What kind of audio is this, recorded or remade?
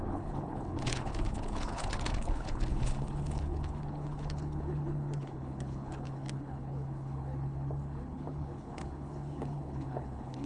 remade